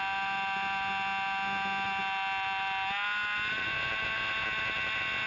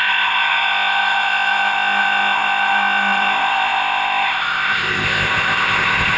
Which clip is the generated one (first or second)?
second